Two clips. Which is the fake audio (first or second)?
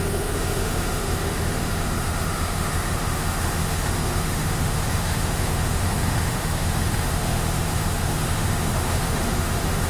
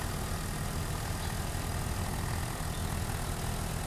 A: first